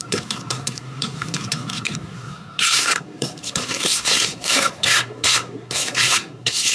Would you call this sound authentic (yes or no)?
no